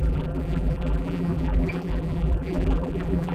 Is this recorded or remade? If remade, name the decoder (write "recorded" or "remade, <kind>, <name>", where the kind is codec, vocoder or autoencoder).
remade, vocoder, BigVGAN v2